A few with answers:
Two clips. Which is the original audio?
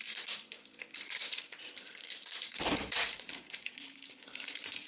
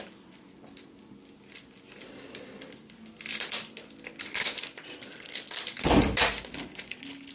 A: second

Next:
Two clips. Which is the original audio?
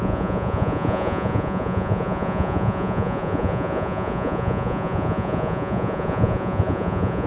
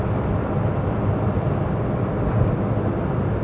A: second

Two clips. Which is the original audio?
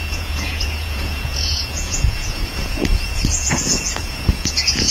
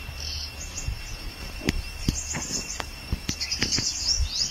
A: second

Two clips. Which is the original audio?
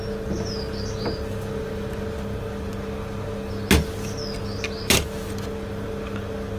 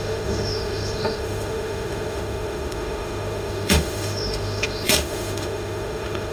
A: first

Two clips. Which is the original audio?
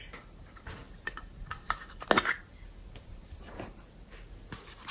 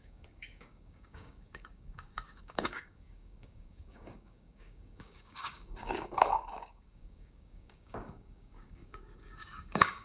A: first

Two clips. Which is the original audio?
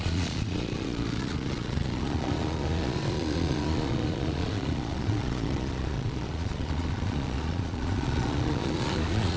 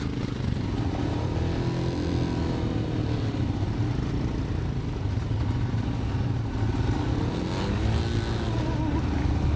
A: second